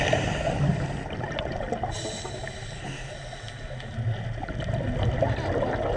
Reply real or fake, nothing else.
real